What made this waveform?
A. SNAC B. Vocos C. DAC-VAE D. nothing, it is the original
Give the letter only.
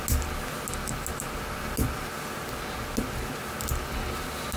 D